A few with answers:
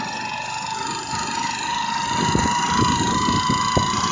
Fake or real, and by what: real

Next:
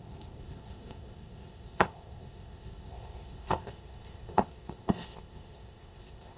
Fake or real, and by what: fake, codec, ZipCodec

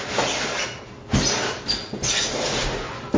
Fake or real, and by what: real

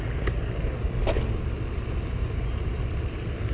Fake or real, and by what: real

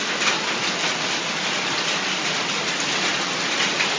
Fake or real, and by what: real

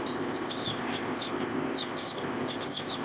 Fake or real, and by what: fake, codec, ZipCodec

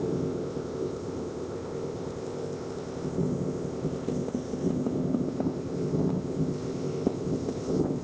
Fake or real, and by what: fake, codec, ZipCodec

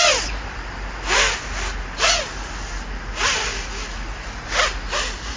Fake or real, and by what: real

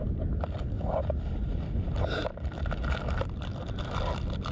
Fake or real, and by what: real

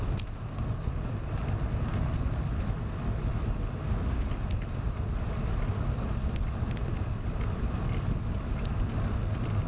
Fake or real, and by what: real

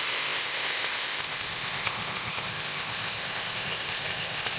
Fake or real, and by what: fake, codec, ZipCodec